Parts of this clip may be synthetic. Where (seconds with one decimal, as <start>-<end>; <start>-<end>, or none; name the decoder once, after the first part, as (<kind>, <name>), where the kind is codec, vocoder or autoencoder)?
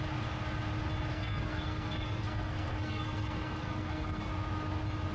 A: 1.1-4.2 (codec, SNAC)